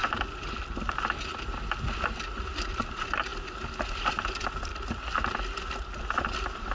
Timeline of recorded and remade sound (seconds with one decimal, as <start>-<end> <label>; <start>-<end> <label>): 0.0-6.7 recorded